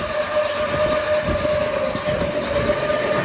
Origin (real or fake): real